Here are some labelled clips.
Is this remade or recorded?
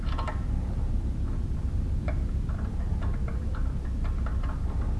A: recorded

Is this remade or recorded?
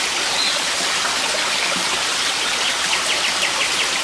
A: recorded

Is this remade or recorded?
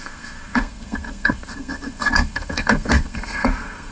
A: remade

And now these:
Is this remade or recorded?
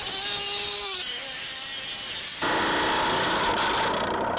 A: recorded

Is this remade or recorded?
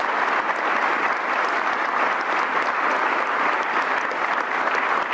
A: recorded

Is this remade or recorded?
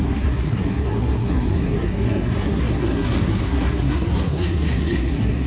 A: remade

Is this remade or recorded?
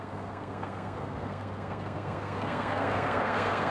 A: remade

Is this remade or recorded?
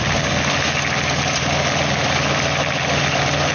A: recorded